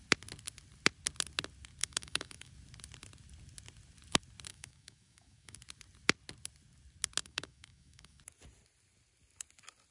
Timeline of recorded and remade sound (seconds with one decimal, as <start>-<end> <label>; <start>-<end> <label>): 0.0-1.8 recorded; 1.8-2.5 remade; 2.5-4.5 recorded; 4.5-5.6 remade; 5.6-7.2 recorded; 7.2-8.2 remade; 8.2-9.9 recorded